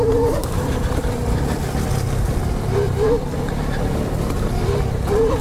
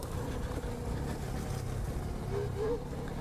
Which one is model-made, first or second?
first